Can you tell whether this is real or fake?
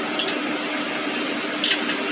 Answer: real